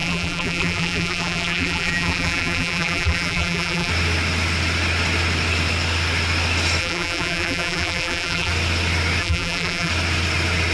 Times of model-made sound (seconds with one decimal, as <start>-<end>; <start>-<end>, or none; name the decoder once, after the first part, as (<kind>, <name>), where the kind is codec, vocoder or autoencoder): 0.0-3.9 (vocoder, BigVGAN v2); 6.8-8.5; 9.2-9.9